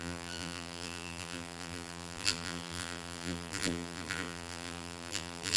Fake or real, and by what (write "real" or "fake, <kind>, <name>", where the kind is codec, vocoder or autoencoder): fake, vocoder, BigVGAN v2